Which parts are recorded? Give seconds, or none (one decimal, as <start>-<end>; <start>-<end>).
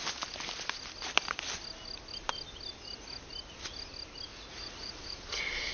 0.0-4.3; 5.2-5.7